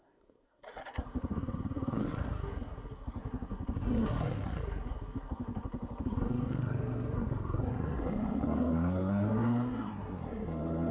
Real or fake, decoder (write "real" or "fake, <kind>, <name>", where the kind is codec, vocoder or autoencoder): fake, codec, SNAC